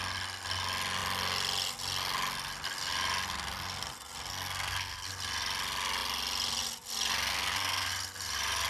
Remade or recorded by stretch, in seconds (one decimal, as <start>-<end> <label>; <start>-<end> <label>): 0.0-4.3 recorded; 4.3-5.1 remade; 5.1-7.3 recorded; 7.3-7.9 remade; 7.9-8.7 recorded